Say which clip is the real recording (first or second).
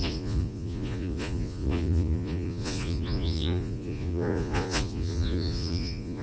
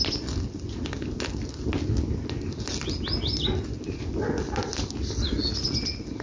second